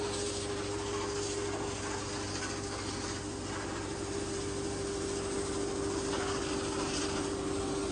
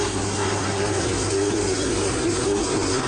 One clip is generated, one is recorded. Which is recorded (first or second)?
first